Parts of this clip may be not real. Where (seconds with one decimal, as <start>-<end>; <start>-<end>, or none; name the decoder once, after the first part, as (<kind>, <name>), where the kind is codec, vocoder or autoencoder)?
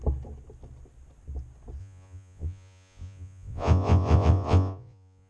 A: 1.8-5.3 (vocoder, Vocos)